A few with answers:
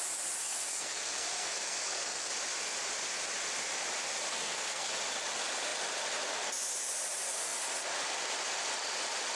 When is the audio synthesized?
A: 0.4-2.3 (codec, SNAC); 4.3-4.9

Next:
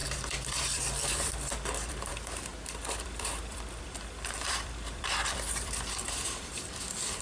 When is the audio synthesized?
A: 0.0-2.1 (vocoder, BigVGAN v2); 2.5-6.8

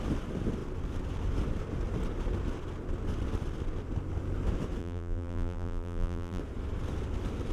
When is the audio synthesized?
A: 4.8-6.4 (vocoder, BigVGAN v2)

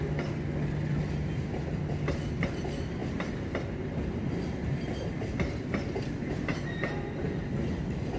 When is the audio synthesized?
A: 6.5-7.1 (vocoder, BigVGAN v2)

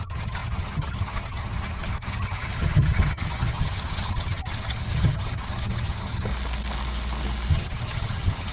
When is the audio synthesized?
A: 0.0-6.3 (vocoder, HiFi-GAN); 7.5-8.5